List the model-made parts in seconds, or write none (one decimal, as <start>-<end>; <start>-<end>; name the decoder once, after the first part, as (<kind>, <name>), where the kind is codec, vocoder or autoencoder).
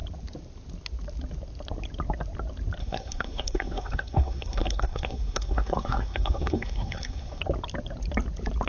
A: 2.8-7.4 (codec, SNAC)